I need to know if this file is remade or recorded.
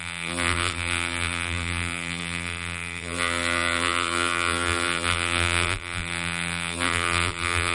remade